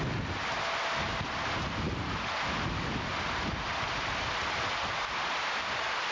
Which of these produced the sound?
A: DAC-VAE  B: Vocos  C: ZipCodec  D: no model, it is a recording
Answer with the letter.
D